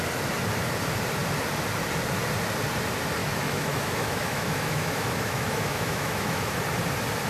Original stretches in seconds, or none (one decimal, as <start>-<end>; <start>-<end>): 0.0-3.2; 6.6-7.3

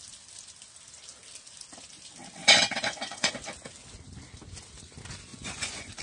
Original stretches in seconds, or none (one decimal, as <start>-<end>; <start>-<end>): 0.0-2.4; 3.3-5.3

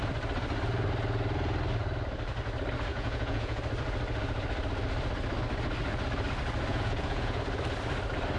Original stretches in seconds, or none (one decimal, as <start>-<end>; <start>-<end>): 0.0-2.9; 3.6-6.7; 7.4-8.4

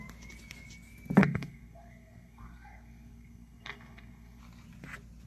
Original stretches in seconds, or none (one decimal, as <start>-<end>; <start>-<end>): 0.0-1.2; 4.4-5.3